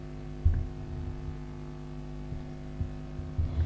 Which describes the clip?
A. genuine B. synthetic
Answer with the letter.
A